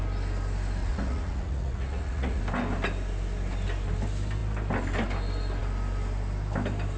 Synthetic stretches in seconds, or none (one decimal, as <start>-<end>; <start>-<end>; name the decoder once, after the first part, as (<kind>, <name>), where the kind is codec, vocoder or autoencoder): 0.8-2.4 (vocoder, Vocos)